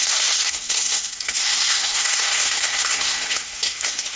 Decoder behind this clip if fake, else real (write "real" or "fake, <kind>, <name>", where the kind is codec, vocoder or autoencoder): fake, codec, SNAC